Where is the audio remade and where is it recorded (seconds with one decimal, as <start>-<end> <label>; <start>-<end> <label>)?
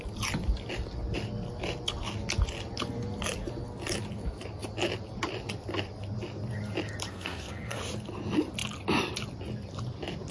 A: 0.0-7.1 recorded; 7.1-7.8 remade; 7.8-10.3 recorded